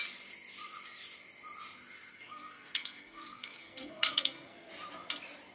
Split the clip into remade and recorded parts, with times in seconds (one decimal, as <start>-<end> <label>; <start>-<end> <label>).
0.0-2.1 recorded; 2.1-4.7 remade; 4.7-5.5 recorded